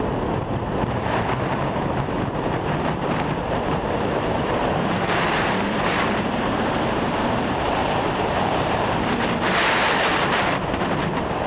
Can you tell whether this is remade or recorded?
remade